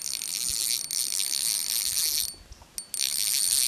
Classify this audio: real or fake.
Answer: real